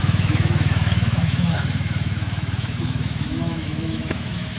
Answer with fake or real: fake